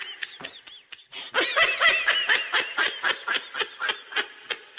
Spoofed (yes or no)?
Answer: no